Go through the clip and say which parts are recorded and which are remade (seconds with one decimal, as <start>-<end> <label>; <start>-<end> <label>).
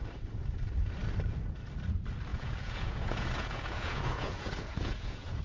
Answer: 0.0-2.3 recorded; 2.3-5.4 remade